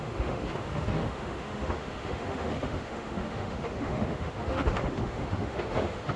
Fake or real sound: fake